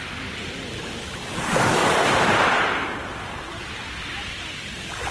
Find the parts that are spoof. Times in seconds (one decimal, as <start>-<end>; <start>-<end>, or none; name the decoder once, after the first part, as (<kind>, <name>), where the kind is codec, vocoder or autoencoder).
1.8-3.8 (vocoder, BigVGAN v2)